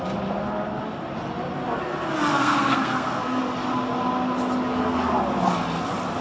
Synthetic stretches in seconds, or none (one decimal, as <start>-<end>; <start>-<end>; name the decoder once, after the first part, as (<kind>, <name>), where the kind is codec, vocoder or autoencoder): 2.3-3.4 (codec, SNAC)